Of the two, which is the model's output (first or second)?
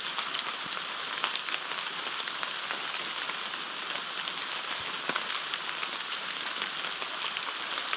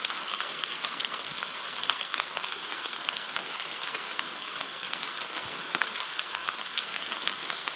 second